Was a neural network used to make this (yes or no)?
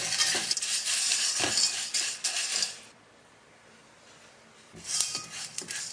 no